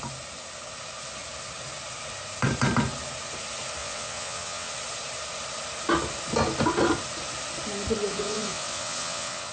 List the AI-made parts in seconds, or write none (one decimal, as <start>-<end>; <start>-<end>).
3.8-4.7; 8.1-9.5